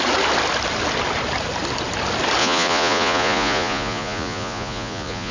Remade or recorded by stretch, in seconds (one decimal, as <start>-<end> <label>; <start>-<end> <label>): 0.0-2.4 recorded; 2.4-5.3 remade